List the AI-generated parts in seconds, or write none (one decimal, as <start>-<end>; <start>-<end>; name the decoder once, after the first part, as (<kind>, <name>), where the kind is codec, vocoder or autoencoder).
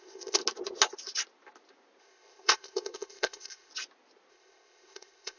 0.0-0.4 (codec, ZipCodec); 2.0-3.7; 4.3-5.4